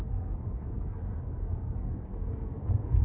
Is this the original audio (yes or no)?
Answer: no